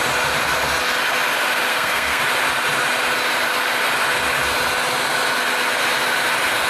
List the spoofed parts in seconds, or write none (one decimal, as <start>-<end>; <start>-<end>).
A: 1.7-2.2